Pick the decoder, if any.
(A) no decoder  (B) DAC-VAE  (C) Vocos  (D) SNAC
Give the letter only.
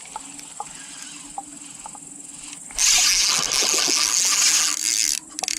A